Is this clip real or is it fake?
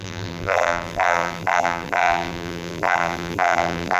fake